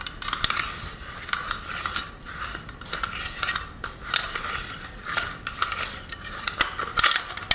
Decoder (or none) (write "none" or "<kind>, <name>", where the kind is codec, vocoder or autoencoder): none